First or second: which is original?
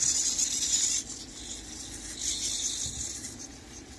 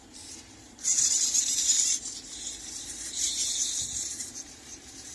first